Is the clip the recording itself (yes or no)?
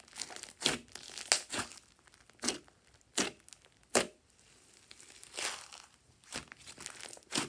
yes